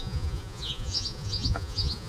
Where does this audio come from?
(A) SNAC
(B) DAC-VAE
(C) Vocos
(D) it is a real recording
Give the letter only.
C